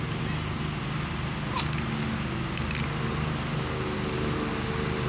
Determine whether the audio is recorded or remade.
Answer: recorded